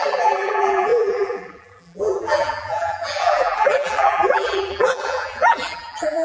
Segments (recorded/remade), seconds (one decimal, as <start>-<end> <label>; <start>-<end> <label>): 0.0-6.2 remade